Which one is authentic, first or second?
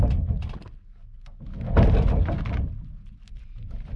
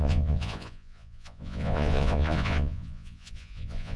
first